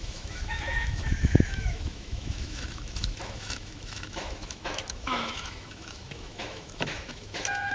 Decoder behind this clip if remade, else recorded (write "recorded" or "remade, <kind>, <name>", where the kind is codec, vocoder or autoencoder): remade, autoencoder, DAC-VAE